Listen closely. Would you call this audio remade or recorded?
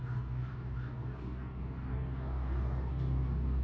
remade